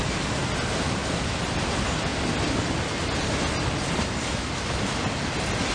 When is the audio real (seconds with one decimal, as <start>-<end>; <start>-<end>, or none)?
0.0-5.7